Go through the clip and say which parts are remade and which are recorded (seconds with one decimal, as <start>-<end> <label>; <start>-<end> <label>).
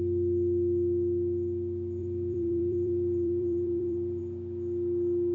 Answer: 0.0-2.0 recorded; 2.0-4.2 remade; 4.2-5.3 recorded